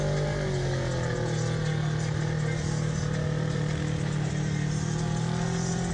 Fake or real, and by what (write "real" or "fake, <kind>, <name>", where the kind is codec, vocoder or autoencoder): real